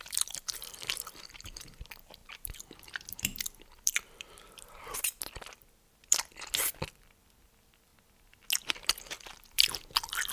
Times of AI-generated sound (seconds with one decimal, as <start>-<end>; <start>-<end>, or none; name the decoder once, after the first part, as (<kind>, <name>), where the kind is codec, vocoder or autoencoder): 0.0-7.9 (vocoder, BigVGAN v2); 9.3-10.3